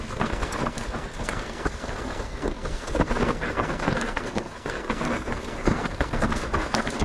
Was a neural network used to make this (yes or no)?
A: yes